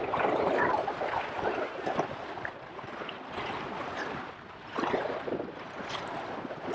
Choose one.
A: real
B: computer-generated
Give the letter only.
A